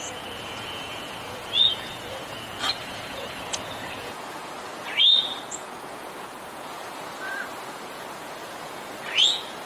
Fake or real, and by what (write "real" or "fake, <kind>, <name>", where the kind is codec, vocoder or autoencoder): fake, vocoder, Vocos